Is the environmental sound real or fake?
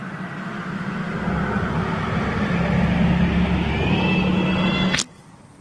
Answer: real